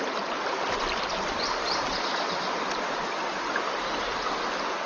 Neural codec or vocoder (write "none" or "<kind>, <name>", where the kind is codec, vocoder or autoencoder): none